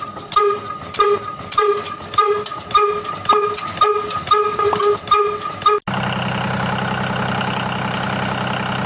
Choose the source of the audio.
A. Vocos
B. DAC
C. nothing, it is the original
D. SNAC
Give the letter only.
C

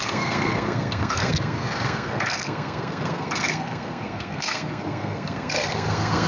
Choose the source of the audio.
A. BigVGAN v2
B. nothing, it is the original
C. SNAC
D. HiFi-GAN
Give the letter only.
C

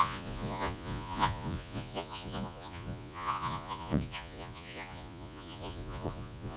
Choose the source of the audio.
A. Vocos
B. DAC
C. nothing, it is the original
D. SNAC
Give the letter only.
A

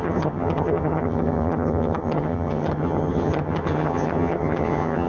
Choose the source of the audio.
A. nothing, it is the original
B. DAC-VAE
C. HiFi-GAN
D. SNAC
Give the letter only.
C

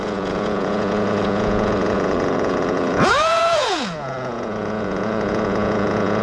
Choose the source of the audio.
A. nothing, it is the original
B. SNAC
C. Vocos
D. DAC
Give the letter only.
C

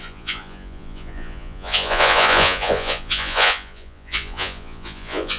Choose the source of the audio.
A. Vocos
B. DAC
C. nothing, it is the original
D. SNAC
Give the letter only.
A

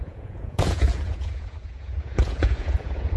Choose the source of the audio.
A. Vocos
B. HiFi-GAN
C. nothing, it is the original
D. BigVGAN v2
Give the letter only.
A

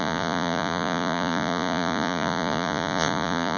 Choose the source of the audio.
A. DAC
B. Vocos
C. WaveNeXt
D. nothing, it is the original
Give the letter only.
B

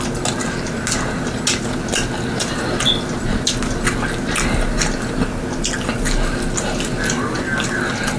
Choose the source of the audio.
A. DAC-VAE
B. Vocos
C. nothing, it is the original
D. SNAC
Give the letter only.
C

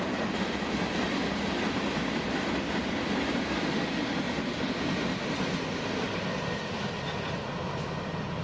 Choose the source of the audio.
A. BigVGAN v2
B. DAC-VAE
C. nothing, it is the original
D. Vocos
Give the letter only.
C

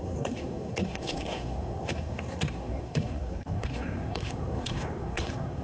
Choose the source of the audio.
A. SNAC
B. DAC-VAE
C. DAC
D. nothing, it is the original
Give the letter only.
A